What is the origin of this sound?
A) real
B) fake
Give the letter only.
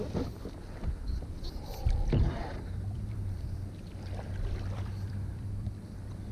B